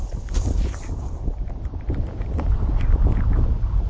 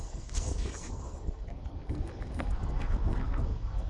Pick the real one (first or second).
first